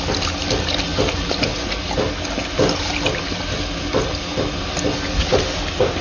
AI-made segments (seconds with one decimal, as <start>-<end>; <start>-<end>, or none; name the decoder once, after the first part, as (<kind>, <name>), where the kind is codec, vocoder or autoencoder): none